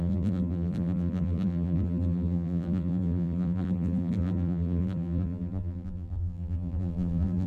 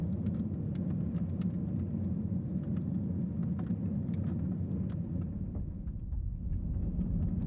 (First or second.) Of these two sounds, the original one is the second